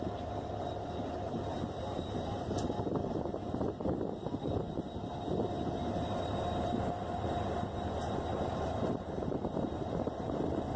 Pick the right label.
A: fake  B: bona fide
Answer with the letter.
B